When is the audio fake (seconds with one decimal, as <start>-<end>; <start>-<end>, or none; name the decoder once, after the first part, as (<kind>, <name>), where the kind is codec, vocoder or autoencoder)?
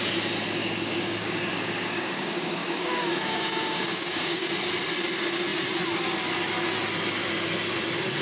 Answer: 0.6-4.5 (codec, DAC)